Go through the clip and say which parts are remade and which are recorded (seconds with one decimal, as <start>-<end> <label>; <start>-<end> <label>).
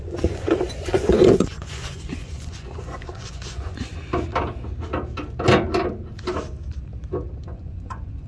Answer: 0.0-3.9 remade; 3.9-7.3 recorded; 7.3-8.3 remade